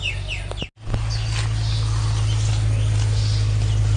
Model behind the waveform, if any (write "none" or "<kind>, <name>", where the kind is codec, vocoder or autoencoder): none